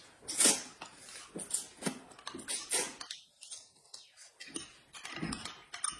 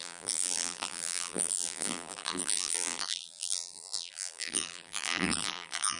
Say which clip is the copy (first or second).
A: second